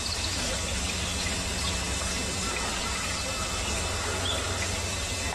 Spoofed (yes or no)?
no